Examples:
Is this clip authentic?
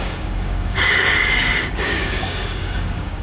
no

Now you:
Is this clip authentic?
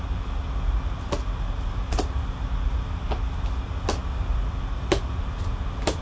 yes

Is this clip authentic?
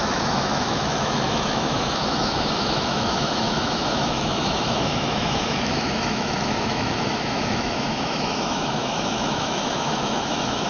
no